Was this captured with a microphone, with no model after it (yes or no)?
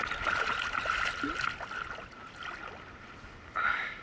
yes